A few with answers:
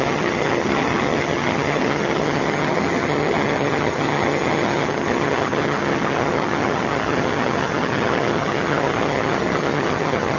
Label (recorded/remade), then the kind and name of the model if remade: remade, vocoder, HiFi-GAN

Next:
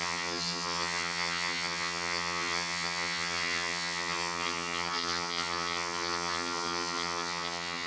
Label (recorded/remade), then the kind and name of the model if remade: remade, vocoder, HiFi-GAN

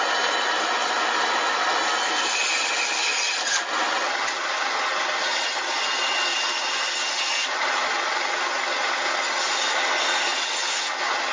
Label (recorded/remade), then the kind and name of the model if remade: recorded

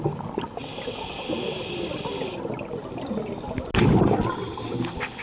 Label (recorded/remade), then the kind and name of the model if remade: recorded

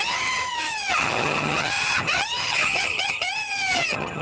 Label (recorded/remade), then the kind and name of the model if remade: remade, vocoder, HiFi-GAN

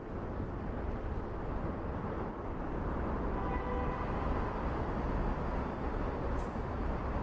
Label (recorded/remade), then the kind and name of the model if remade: recorded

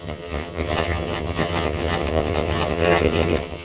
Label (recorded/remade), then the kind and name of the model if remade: remade, vocoder, HiFi-GAN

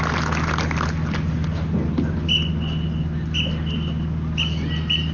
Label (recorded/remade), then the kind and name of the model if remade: recorded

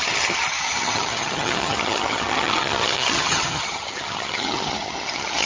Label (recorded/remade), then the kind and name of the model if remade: remade, vocoder, HiFi-GAN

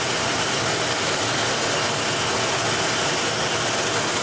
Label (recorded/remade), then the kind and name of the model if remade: recorded